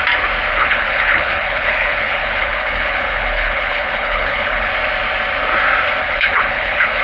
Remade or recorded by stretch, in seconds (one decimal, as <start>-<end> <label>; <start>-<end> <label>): 0.0-0.5 recorded; 0.5-4.7 remade; 4.7-6.0 recorded; 6.0-7.0 remade